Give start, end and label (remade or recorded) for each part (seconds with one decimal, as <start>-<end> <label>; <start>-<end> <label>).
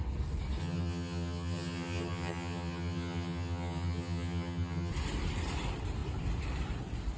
0.0-0.6 recorded; 0.6-4.9 remade; 4.9-7.2 recorded